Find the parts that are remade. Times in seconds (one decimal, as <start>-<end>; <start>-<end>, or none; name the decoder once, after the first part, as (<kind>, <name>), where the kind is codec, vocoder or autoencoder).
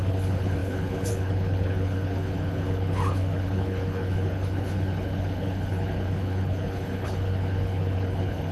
0.0-8.5 (codec, HILCodec)